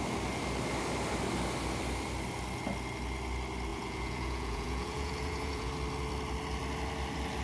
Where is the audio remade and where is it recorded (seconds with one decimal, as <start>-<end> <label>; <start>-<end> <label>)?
0.0-3.7 recorded; 3.7-5.7 remade; 5.7-7.4 recorded